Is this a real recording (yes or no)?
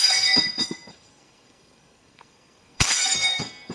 no